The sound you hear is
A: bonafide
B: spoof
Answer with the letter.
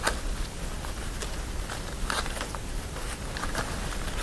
A